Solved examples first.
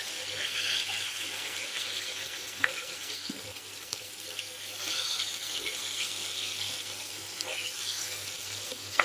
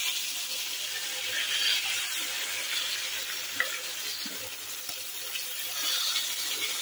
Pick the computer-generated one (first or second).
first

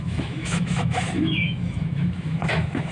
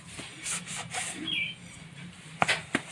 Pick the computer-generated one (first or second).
first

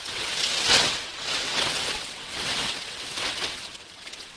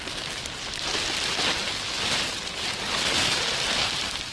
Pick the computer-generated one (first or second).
first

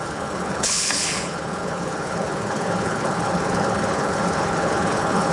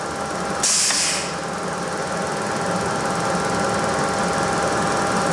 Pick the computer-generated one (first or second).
first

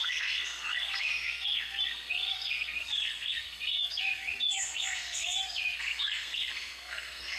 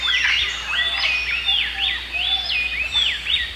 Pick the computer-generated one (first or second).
first